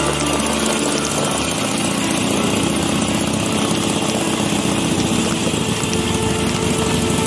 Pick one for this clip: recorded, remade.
recorded